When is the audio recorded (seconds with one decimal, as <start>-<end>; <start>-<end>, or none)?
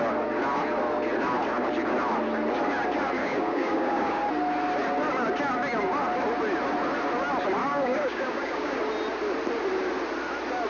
0.0-3.2; 4.2-7.6; 8.8-10.7